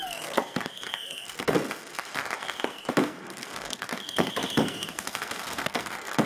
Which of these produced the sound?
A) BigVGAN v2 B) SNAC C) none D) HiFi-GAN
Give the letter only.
B